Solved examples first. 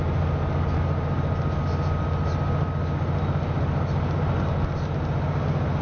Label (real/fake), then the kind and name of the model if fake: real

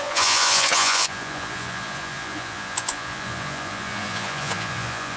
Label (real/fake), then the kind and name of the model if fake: fake, vocoder, Vocos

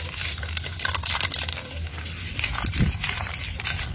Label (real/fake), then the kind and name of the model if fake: real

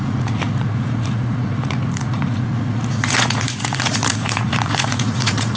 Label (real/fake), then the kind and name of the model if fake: fake, vocoder, Vocos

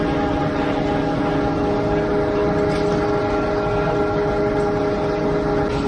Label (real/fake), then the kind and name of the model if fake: real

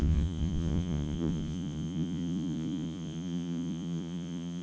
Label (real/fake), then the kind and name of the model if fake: fake, vocoder, Vocos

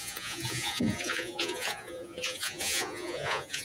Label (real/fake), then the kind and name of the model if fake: fake, vocoder, Vocos